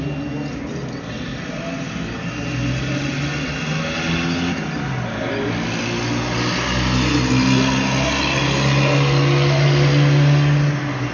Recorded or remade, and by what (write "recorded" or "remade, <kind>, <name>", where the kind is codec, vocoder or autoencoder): recorded